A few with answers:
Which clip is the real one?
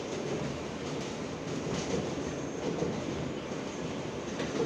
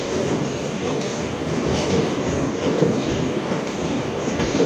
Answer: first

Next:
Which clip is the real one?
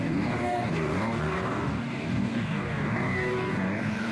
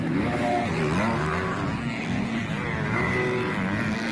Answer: second